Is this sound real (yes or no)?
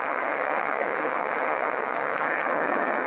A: no